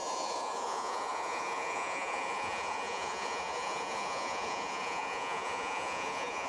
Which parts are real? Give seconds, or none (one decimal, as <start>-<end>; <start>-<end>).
none